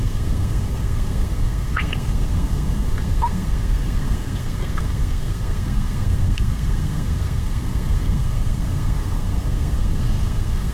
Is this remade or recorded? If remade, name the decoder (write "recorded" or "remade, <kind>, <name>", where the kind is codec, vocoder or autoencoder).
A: remade, codec, SNAC